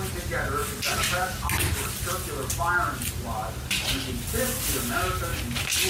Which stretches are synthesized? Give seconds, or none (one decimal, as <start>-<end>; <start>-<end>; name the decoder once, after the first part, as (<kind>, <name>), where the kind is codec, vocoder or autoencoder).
none

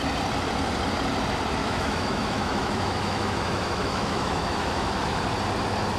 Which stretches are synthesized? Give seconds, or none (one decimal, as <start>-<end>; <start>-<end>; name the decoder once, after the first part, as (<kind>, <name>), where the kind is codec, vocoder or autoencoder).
1.6-5.2 (autoencoder, DAC-VAE)

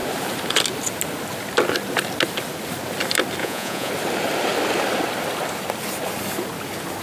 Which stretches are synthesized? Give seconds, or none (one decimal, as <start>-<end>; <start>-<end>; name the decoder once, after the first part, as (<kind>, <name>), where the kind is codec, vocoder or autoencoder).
3.4-3.9 (vocoder, Vocos)

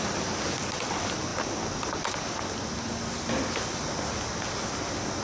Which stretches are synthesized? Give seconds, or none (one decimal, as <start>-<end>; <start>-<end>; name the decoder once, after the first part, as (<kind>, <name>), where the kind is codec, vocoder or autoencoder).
none

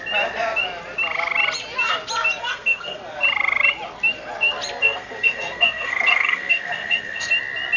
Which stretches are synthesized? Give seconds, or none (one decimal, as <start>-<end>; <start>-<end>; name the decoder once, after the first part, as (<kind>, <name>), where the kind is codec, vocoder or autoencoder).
2.4-3.0 (codec, SNAC); 4.8-7.3

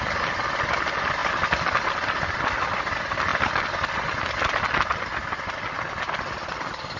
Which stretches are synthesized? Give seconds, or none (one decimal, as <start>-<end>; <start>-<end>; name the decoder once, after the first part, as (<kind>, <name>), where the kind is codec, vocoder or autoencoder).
none